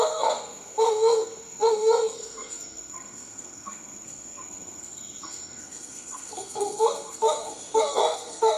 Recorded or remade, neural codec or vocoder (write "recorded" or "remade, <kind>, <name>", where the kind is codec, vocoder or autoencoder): remade, codec, SNAC